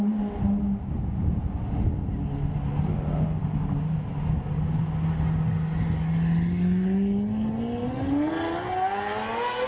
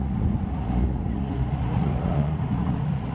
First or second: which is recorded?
first